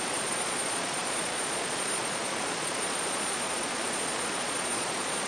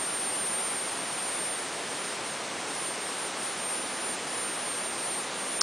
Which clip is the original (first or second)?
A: second